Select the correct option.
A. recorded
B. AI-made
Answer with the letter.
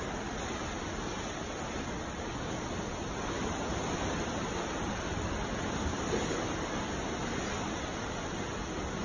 A